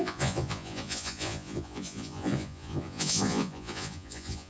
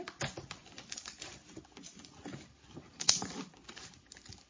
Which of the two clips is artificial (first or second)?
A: first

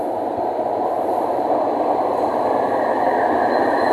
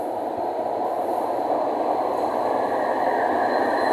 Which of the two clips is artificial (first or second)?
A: first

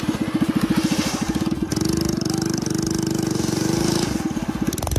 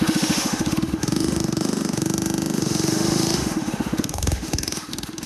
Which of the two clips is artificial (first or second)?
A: second